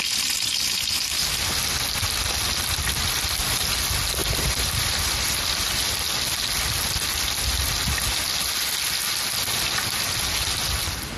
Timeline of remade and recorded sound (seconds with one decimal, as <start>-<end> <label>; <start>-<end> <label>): 0.0-4.2 recorded; 4.2-5.9 remade; 5.9-11.2 recorded